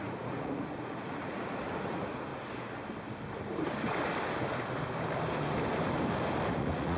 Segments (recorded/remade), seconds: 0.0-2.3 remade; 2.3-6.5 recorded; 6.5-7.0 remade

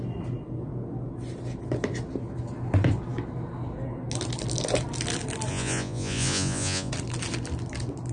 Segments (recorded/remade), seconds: 0.0-5.5 recorded; 5.5-6.9 remade; 6.9-8.1 recorded

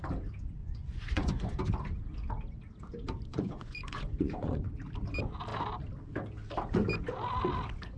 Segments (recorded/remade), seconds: 0.0-0.6 recorded; 0.6-1.6 remade; 1.6-3.3 recorded; 3.3-4.7 remade; 4.7-8.0 recorded

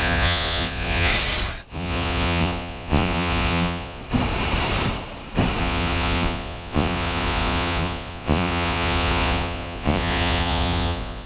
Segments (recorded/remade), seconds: 0.0-1.1 remade; 1.1-1.7 recorded; 1.7-4.0 remade; 4.0-5.6 recorded; 5.6-11.3 remade

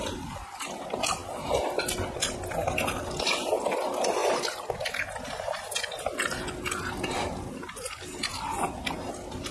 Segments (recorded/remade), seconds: 0.0-9.5 recorded

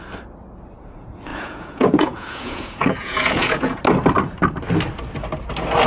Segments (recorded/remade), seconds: 0.0-1.3 recorded; 1.3-3.8 remade; 3.8-5.9 recorded